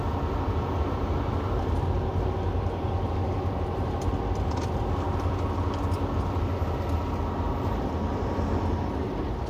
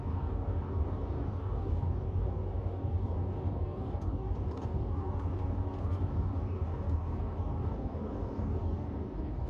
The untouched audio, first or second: first